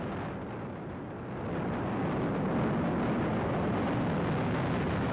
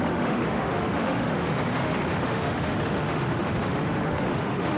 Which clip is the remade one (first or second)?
second